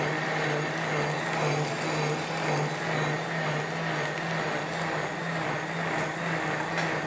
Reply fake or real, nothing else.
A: real